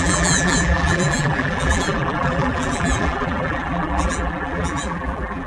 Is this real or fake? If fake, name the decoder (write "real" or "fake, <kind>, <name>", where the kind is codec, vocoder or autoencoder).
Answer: fake, vocoder, BigVGAN v2